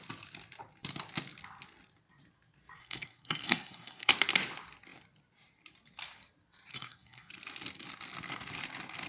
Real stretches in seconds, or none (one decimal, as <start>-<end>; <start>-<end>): 0.0-2.8; 4.1-6.7; 7.3-9.1